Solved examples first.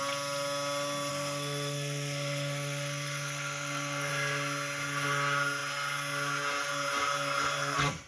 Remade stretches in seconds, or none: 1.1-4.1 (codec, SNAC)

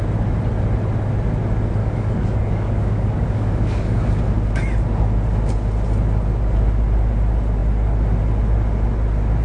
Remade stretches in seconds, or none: 1.8-4.1 (codec, DAC)

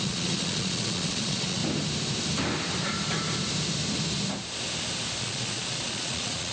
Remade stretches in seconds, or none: 0.0-1.6 (vocoder, Vocos); 5.2-6.5

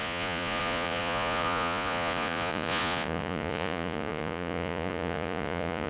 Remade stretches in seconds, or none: 0.0-5.9 (vocoder, Vocos)